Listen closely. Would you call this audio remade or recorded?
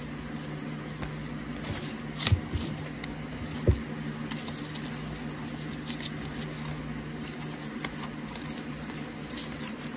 recorded